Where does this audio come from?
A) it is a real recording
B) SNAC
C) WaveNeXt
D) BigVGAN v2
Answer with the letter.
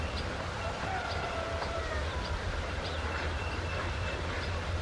D